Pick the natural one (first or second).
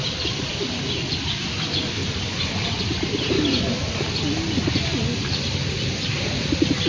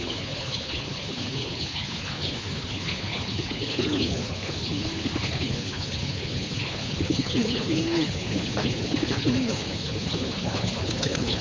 first